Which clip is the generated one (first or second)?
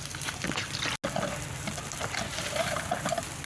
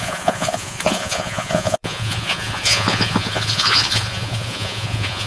second